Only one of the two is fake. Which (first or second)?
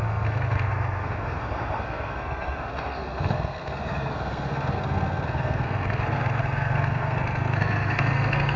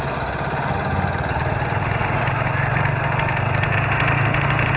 first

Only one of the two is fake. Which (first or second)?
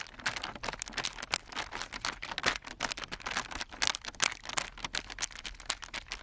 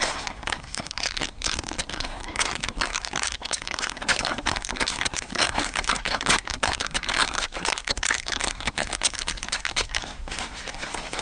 second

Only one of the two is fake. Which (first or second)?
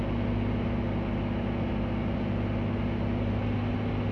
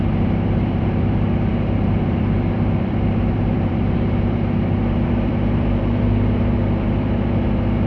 second